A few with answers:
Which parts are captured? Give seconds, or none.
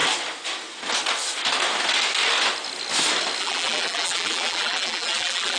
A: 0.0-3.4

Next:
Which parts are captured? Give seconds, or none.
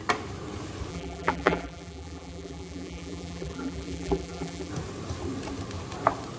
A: 0.0-0.9; 4.7-6.4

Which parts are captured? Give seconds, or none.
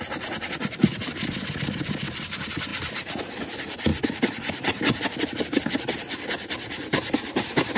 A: 0.0-2.7; 3.2-3.9; 5.0-7.8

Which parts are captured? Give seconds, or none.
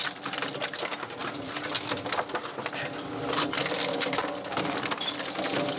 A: 0.0-5.8